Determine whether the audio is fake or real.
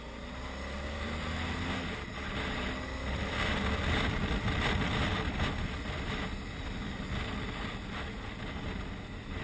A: real